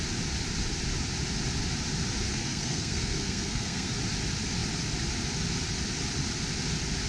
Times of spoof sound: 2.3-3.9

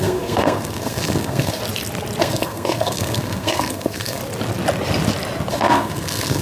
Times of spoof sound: 0.0-1.6; 2.2-4.2; 5.5-6.4